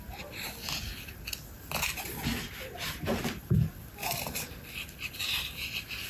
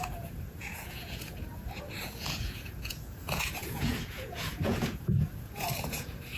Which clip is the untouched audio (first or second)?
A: first